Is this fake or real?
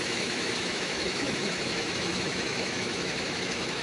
fake